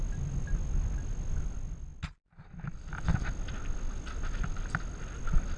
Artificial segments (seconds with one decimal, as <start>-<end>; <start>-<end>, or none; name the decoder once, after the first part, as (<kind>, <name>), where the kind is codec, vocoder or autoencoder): none